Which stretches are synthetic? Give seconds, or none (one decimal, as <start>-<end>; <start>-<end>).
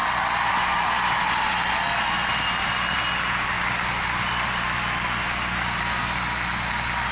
none